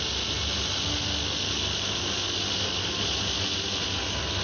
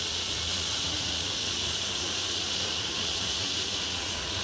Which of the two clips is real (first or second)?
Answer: first